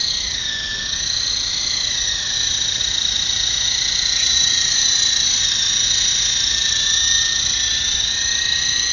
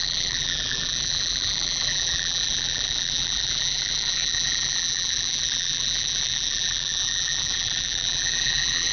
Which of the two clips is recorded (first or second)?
first